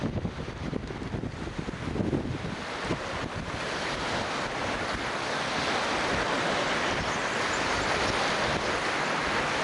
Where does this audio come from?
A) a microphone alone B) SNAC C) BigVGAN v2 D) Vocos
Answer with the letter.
A